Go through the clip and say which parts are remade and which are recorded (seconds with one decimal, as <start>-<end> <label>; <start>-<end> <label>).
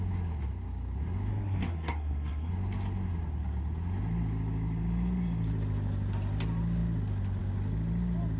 0.0-1.3 recorded; 1.3-2.5 remade; 2.5-8.4 recorded